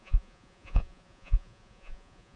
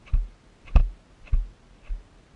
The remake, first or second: first